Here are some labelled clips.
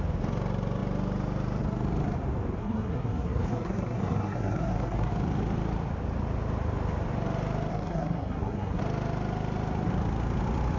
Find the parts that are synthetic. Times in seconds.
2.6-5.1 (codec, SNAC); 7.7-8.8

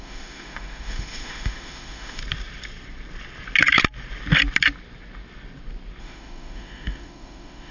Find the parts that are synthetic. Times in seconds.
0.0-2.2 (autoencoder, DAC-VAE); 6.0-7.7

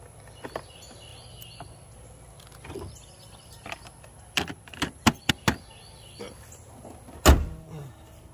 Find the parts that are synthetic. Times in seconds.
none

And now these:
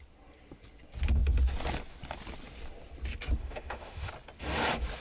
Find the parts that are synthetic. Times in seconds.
3.4-4.1 (autoencoder, DAC-VAE)